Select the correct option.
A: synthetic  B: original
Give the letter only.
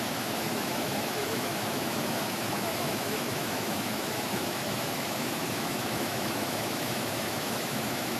A